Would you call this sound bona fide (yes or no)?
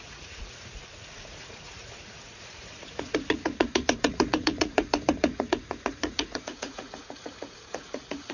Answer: no